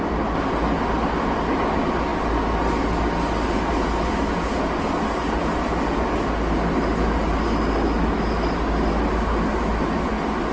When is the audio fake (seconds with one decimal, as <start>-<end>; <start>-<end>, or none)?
none